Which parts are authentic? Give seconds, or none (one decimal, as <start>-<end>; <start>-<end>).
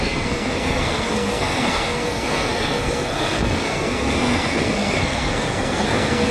none